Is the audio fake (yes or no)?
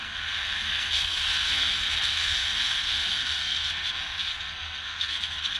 yes